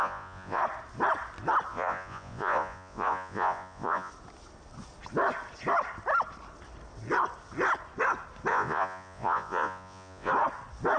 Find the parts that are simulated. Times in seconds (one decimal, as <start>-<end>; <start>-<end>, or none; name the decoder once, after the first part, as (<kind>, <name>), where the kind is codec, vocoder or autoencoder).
0.0-0.6 (vocoder, Vocos); 1.7-4.1; 8.5-10.3